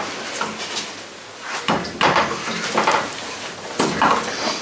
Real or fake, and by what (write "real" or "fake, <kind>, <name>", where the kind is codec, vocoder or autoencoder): real